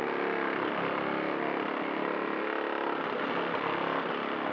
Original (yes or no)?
yes